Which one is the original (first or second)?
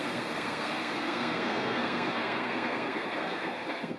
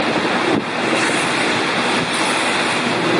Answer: second